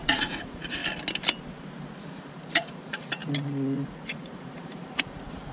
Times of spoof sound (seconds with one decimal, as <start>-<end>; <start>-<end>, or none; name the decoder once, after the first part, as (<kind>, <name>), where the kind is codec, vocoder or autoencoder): 0.0-0.8 (vocoder, Vocos); 2.0-5.5